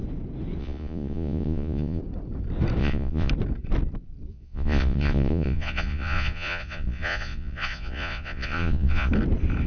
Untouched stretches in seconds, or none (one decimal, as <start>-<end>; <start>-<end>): 0.0-0.6; 2.0-2.8; 3.3-4.3; 9.1-9.7